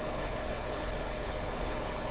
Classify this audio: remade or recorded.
remade